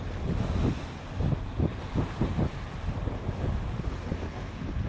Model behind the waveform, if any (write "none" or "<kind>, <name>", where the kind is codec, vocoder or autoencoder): none